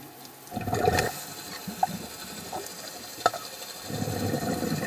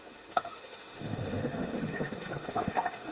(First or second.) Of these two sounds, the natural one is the first